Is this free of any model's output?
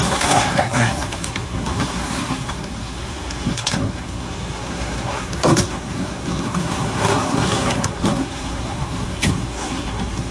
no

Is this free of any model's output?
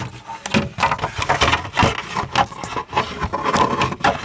yes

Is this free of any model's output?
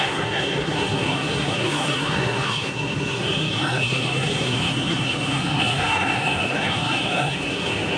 no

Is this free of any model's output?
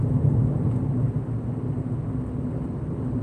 yes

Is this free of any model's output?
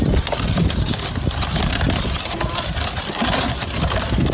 yes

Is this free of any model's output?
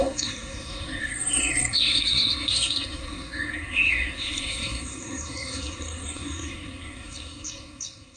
no